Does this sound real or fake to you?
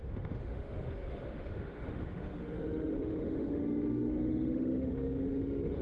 fake